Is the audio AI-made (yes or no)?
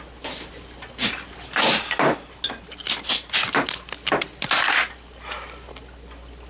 no